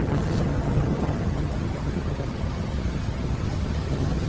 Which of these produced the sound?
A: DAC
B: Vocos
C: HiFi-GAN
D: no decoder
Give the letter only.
C